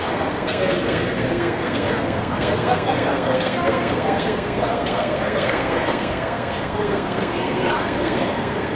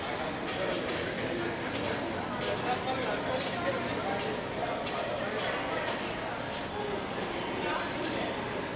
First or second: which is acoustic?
second